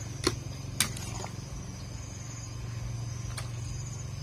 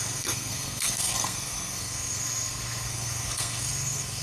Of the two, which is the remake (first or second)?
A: second